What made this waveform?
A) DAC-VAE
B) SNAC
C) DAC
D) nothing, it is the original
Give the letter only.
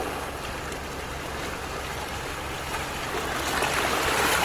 D